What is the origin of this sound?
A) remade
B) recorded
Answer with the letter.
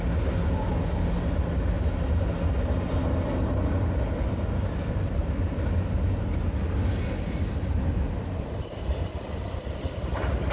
B